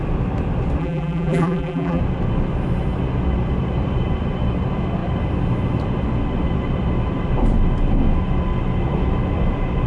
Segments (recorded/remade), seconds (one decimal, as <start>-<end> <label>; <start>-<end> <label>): 0.0-0.8 recorded; 0.8-2.0 remade; 2.0-9.9 recorded